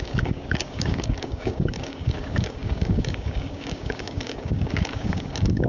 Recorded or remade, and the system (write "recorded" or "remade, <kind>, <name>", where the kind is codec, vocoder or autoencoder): remade, codec, DAC